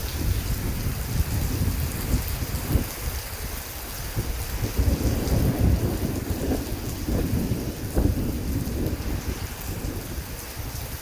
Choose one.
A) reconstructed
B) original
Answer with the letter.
B